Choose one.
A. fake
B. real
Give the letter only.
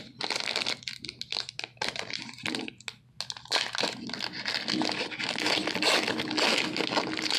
B